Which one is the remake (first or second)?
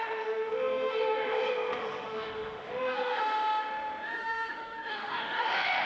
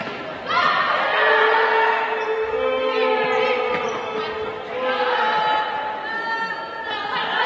first